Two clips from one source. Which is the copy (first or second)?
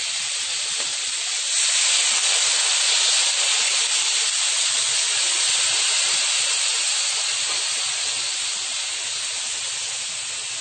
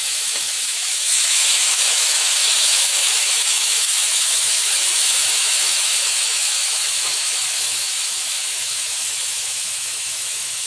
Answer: second